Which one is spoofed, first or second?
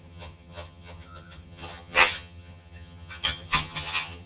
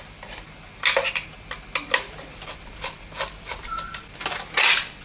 first